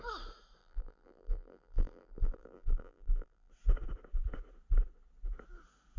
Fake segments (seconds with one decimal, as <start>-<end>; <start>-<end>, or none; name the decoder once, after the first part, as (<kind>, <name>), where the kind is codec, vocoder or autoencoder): 0.6-3.5 (vocoder, BigVGAN v2)